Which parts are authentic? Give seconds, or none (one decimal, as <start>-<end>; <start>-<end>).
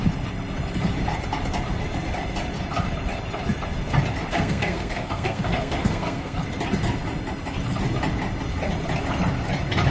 0.0-4.3; 6.4-9.9